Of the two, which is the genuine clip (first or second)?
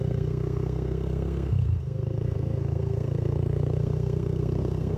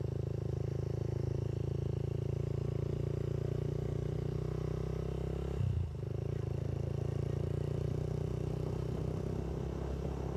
second